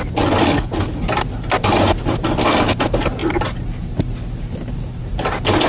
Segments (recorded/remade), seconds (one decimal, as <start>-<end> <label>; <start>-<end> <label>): 0.0-5.7 recorded